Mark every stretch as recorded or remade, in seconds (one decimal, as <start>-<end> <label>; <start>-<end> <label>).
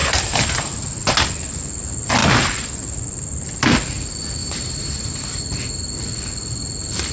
0.0-0.7 remade; 0.7-4.4 recorded; 4.4-5.4 remade; 5.4-7.1 recorded